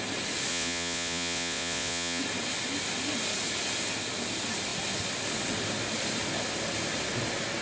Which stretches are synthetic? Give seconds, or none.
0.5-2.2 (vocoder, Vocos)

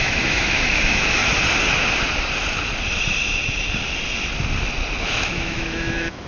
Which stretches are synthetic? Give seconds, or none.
0.0-1.2 (autoencoder, DAC-VAE); 5.0-6.3